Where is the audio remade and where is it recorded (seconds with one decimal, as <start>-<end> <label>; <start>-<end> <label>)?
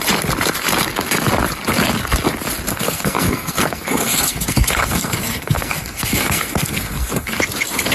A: 0.0-2.7 recorded; 2.7-7.4 remade; 7.4-7.9 recorded